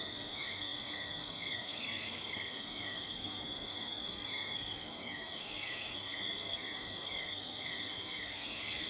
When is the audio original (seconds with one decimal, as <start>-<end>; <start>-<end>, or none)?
none